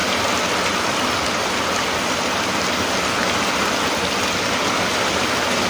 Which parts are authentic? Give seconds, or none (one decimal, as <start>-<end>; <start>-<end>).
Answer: 0.0-5.7